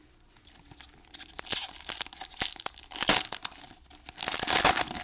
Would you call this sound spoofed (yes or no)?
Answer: no